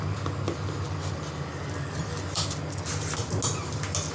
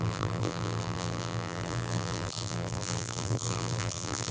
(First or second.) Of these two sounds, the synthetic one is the second